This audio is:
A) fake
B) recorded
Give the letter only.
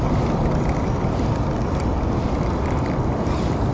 B